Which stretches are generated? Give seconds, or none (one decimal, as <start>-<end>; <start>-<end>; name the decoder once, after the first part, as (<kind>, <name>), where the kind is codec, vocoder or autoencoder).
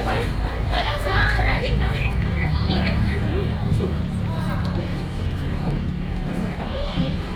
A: 0.0-4.0 (codec, DAC); 4.8-7.4